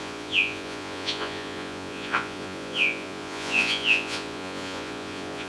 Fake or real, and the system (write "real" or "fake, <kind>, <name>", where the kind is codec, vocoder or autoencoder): fake, vocoder, Vocos